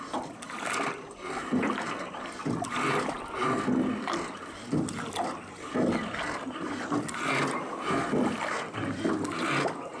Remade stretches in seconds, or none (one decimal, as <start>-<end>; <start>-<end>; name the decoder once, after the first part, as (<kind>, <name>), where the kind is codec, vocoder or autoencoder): none